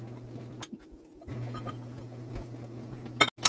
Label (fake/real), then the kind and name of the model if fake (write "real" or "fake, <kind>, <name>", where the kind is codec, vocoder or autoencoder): real